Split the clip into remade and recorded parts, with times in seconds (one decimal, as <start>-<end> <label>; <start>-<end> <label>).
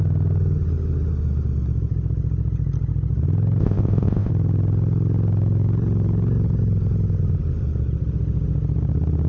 0.0-3.6 recorded; 3.6-4.3 remade; 4.3-9.3 recorded